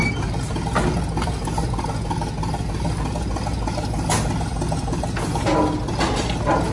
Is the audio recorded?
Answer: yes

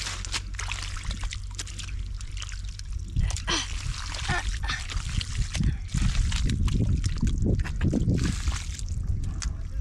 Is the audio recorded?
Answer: yes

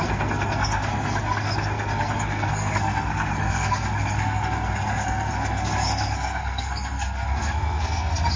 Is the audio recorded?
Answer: no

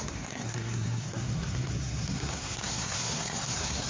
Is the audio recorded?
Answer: no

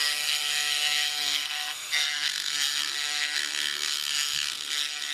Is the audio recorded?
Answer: no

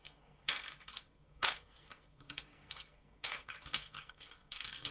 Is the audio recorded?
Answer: no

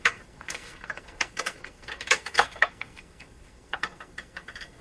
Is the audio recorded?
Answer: no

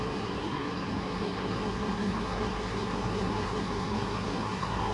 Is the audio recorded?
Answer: no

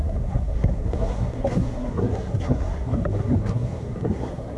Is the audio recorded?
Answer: no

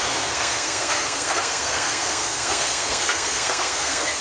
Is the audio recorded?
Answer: no